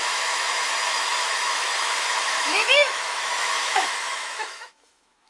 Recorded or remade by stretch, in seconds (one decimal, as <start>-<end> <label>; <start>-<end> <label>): 0.0-5.3 remade